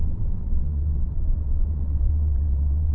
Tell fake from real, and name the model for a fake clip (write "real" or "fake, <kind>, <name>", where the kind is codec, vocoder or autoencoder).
fake, vocoder, WaveNeXt